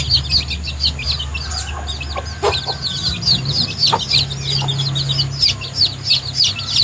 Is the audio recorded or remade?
recorded